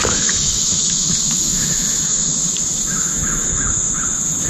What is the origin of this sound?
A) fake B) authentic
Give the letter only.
A